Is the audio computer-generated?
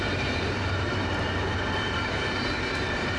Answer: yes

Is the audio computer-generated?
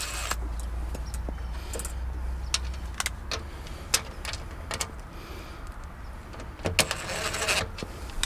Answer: no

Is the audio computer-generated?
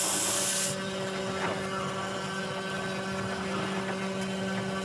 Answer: no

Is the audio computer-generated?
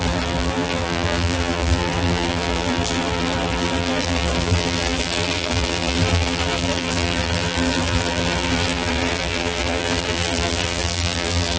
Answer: yes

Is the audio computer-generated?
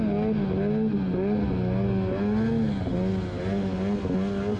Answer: no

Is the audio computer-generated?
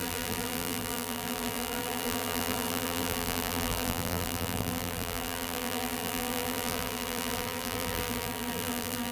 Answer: yes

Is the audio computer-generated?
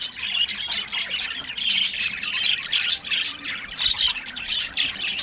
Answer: no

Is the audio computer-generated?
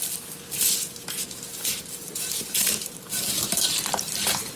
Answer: yes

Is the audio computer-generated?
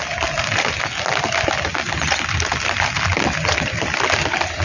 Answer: no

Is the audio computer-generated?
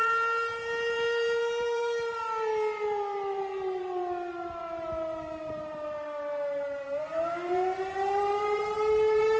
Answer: yes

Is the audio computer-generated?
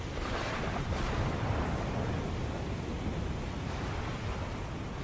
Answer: no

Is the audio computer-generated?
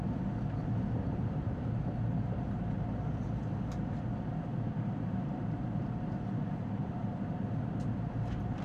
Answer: yes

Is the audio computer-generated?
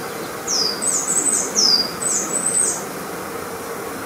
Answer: no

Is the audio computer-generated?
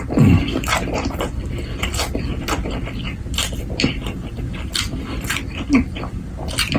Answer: yes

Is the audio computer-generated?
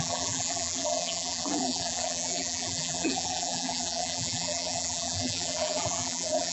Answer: yes